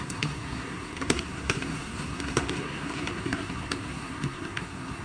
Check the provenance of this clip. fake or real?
fake